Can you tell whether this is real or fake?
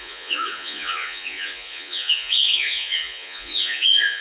fake